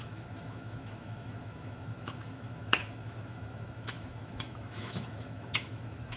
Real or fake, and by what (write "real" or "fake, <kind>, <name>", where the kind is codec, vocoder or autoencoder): fake, autoencoder, DAC-VAE